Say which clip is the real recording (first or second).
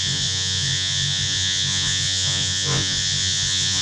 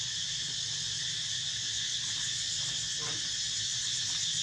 second